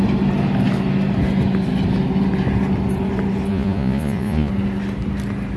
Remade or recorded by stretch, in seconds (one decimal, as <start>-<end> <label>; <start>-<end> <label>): 0.0-3.5 recorded; 3.5-4.5 remade; 4.5-5.6 recorded